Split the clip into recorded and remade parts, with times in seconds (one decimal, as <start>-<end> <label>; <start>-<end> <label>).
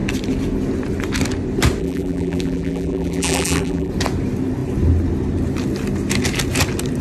0.0-1.8 recorded; 1.8-3.9 remade; 3.9-7.0 recorded